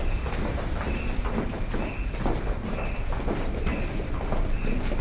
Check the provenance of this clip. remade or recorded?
recorded